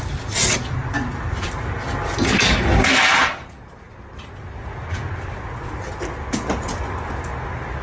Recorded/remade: recorded